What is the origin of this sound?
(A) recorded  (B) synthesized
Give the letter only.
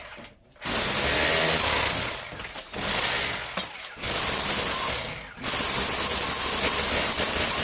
A